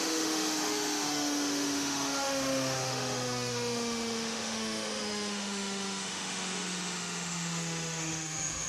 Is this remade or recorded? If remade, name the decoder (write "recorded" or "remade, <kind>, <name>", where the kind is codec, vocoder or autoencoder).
remade, autoencoder, DAC-VAE